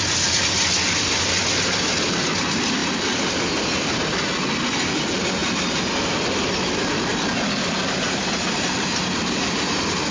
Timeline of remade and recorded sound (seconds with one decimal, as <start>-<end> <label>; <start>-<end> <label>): 0.0-10.1 recorded